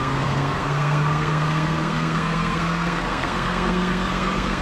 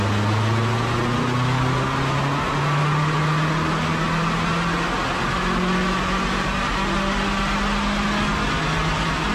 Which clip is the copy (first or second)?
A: first